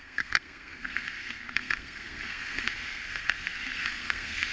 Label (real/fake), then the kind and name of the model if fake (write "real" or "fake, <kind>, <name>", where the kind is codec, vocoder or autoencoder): fake, codec, SNAC